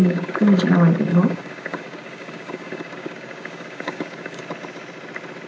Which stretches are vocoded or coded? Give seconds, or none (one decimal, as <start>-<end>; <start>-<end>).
0.0-0.6; 1.1-4.4